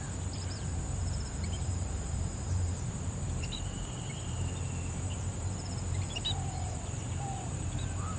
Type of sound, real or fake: fake